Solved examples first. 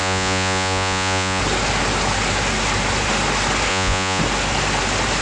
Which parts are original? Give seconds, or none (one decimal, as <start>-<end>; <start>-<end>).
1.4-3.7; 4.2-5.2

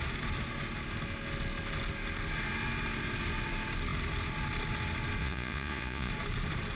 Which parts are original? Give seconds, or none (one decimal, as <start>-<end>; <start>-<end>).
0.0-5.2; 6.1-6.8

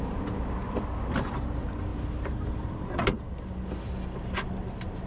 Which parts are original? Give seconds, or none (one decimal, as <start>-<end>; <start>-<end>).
0.0-1.9; 2.9-5.1

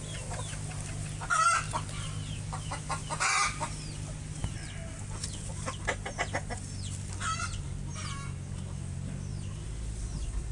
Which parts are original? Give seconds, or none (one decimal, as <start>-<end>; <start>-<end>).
0.0-10.5